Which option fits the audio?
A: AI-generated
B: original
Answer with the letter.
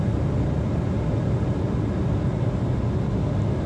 B